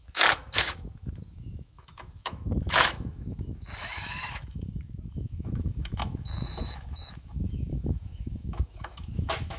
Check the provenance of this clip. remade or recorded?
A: remade